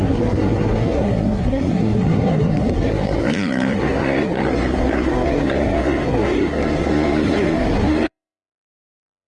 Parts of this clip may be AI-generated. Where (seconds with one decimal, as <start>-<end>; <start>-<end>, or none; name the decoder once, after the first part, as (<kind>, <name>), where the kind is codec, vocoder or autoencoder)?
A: 0.0-9.3 (codec, SNAC)